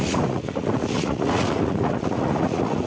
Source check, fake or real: fake